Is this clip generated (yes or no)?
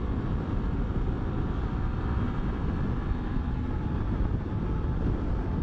yes